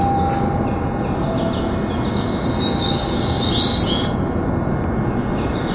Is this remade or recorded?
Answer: recorded